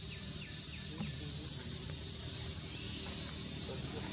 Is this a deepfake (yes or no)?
no